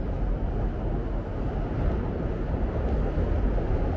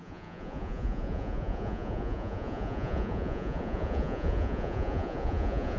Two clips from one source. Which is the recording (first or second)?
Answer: first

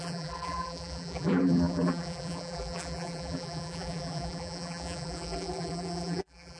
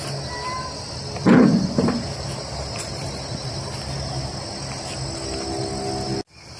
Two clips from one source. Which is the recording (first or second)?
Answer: second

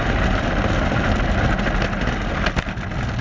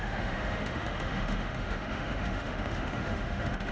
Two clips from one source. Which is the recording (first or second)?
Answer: first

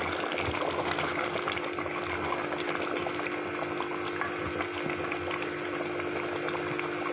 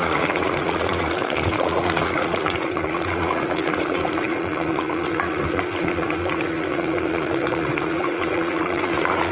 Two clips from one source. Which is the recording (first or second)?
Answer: first